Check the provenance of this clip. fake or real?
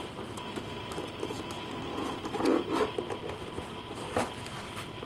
real